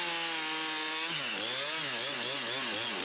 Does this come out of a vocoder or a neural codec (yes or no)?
no